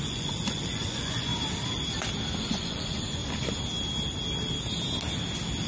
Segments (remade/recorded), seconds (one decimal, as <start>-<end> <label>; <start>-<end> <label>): 0.0-1.3 remade; 1.3-2.4 recorded; 2.4-3.2 remade; 3.2-5.7 recorded